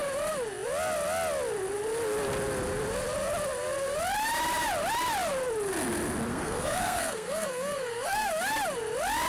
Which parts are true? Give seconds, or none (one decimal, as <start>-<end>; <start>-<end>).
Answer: 0.0-6.3; 8.3-9.3